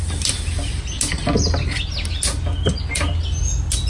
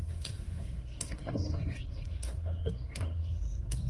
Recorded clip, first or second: first